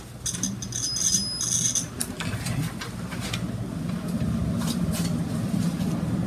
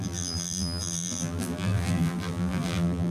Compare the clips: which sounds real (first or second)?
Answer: first